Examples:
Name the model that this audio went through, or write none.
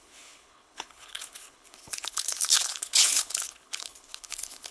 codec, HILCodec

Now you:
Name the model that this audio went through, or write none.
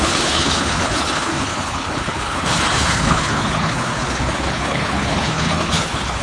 codec, HILCodec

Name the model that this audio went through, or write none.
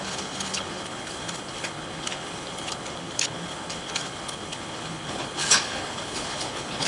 codec, HILCodec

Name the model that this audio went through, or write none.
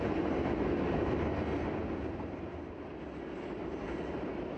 none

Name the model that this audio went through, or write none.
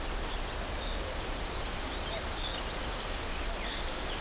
none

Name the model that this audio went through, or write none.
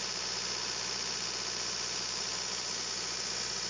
none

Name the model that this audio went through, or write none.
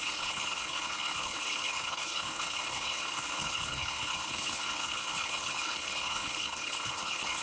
codec, HILCodec